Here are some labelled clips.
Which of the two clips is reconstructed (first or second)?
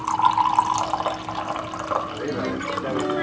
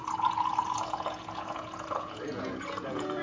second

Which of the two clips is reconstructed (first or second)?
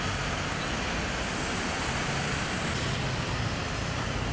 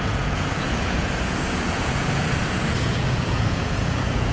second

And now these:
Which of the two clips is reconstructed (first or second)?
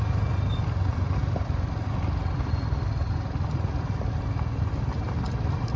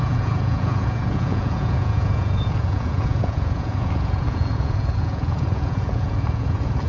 second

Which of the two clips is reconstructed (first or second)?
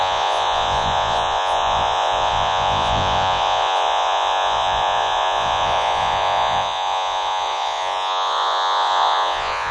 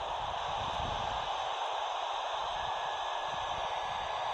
first